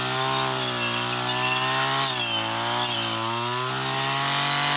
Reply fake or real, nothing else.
real